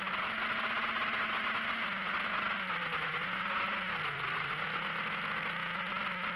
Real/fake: real